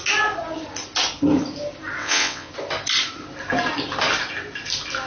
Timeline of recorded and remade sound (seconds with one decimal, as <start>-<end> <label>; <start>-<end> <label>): 0.0-2.0 recorded; 2.0-2.5 remade; 2.5-5.1 recorded